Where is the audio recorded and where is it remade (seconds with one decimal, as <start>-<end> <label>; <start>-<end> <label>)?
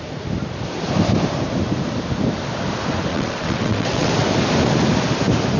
0.0-3.1 recorded; 3.1-4.1 remade; 4.1-5.6 recorded